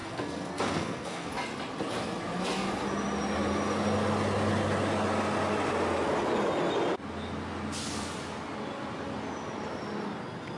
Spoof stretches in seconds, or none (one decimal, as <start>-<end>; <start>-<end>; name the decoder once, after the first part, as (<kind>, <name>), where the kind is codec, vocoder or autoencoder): 0.0-1.3 (codec, SNAC)